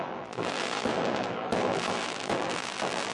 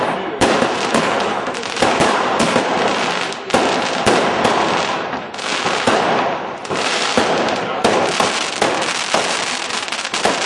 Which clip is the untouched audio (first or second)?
second